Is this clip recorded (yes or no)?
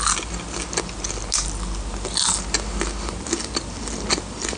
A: yes